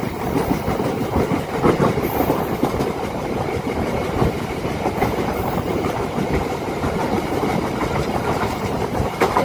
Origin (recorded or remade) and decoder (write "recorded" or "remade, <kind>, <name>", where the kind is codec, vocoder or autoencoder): remade, vocoder, BigVGAN v2